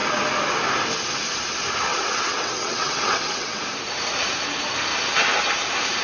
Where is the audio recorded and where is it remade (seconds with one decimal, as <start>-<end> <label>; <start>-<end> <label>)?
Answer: 0.0-1.9 recorded; 1.9-3.6 remade; 3.6-6.0 recorded